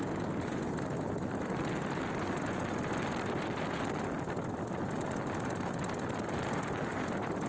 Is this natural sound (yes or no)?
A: yes